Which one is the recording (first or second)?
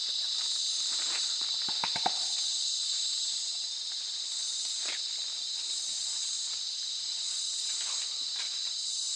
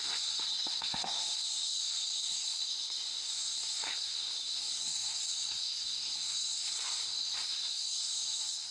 first